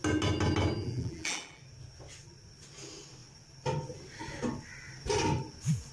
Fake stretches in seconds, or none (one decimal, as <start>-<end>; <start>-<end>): 0.8-1.6